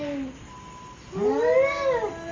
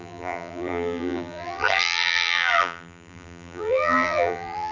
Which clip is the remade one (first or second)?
second